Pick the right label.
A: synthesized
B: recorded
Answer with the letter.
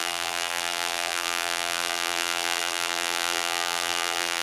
A